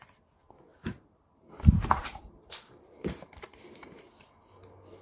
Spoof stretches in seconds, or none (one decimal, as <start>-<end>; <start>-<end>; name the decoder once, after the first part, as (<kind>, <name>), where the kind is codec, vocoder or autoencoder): 0.7-3.6 (vocoder, BigVGAN v2)